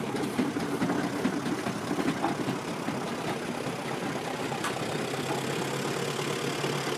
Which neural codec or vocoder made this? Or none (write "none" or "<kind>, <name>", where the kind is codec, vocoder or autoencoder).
none